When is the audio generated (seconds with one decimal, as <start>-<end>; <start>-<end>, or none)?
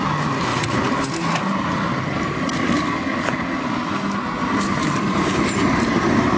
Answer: 0.5-2.4; 4.4-6.4